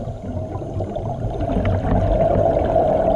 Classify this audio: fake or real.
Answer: real